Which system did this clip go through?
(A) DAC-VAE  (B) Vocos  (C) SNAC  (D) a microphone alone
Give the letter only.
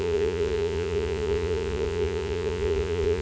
B